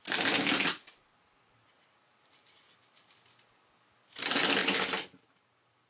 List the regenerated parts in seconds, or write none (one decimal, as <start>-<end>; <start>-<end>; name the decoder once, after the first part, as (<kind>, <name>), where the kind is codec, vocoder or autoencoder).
4.6-5.9 (vocoder, BigVGAN v2)